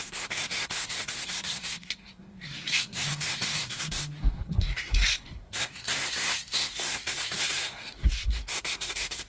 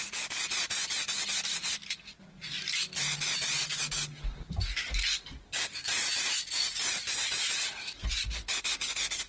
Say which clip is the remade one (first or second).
first